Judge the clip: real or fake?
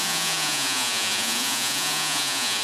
fake